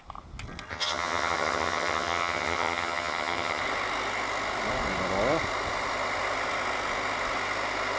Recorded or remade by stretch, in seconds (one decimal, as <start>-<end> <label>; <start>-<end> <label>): 0.0-0.7 recorded; 0.7-3.6 remade; 3.6-8.0 recorded